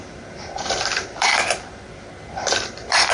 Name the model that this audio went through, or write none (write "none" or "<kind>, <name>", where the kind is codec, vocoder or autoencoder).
vocoder, BigVGAN v2